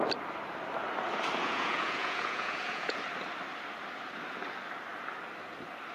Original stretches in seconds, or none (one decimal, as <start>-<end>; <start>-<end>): 0.0-1.4; 3.0-5.9